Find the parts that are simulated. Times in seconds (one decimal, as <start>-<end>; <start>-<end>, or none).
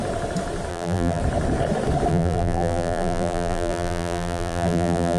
0.7-1.2; 2.1-5.2